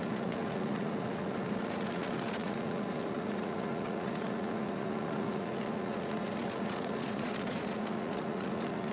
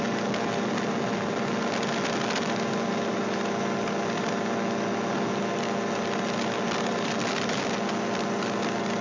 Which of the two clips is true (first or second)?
second